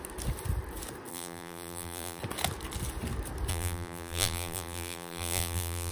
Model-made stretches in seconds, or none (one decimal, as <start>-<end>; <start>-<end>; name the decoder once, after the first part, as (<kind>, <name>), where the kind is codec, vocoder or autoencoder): 1.1-2.2 (vocoder, BigVGAN v2); 3.5-5.9